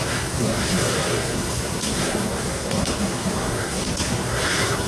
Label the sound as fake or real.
fake